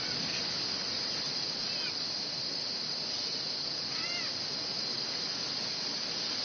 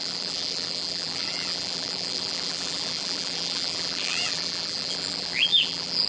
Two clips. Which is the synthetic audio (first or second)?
second